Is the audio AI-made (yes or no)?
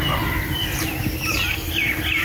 no